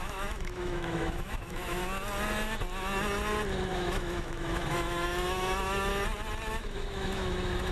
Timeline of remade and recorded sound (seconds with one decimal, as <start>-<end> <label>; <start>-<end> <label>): 0.0-1.8 remade; 1.8-3.7 recorded; 3.7-5.9 remade; 5.9-6.5 recorded; 6.5-7.7 remade